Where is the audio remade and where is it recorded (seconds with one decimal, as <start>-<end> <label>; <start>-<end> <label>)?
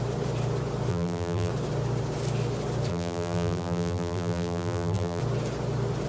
0.0-0.9 recorded; 0.9-1.5 remade; 1.5-2.9 recorded; 2.9-5.2 remade; 5.2-6.1 recorded